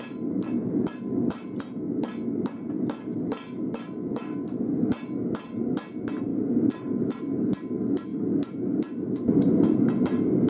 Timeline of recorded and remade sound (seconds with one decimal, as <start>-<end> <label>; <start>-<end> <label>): 0.0-6.3 recorded; 6.3-7.0 remade; 7.0-10.5 recorded